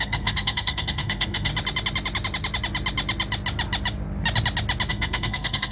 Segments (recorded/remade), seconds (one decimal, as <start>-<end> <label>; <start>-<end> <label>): 0.0-1.5 remade; 1.5-4.9 recorded; 4.9-5.7 remade